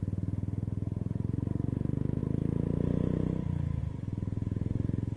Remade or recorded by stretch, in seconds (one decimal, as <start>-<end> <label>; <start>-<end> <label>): 0.0-5.2 recorded